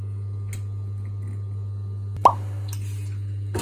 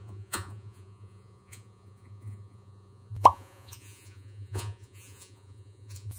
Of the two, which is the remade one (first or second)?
second